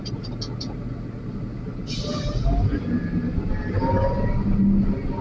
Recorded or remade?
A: recorded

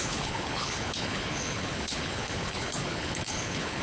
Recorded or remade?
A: remade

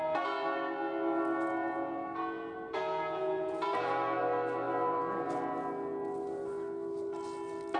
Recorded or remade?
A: recorded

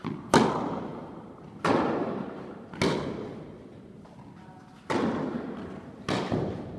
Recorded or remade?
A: recorded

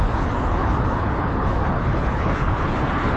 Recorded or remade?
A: remade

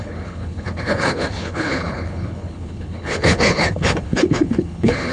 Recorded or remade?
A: remade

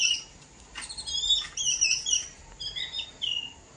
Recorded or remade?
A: recorded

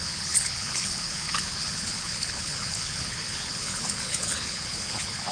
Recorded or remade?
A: remade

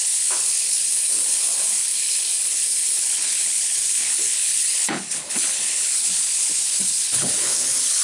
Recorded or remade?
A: remade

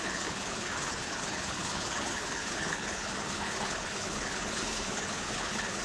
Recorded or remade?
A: remade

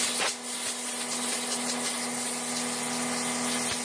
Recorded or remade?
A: recorded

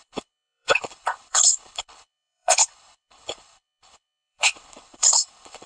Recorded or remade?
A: remade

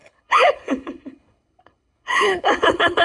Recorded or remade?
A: remade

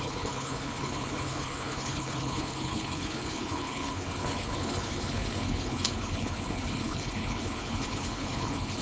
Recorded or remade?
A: remade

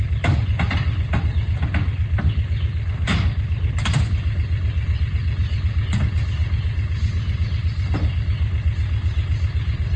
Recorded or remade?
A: recorded